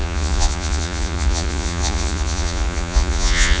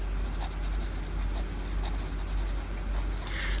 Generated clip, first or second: first